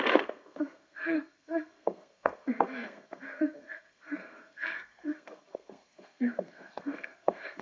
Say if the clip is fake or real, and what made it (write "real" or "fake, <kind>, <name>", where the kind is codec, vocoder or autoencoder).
fake, codec, SNAC